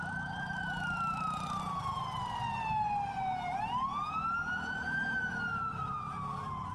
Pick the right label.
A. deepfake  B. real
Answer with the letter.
B